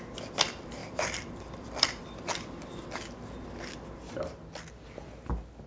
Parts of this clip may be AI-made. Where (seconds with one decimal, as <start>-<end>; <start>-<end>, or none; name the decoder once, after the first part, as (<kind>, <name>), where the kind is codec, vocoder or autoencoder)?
0.8-2.0 (vocoder, BigVGAN v2)